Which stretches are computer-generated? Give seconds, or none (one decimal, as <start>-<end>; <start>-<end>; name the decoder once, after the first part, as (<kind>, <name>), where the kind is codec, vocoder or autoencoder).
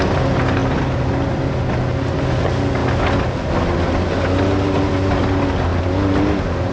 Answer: none